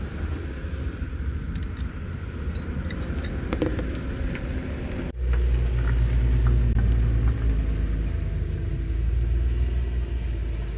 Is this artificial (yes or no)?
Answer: no